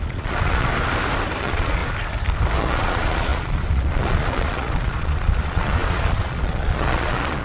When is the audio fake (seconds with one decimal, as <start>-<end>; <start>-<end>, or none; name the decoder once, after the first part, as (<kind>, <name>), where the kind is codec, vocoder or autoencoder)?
0.0-0.7 (vocoder, Vocos); 1.4-1.8; 2.6-7.4